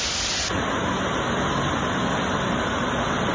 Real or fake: real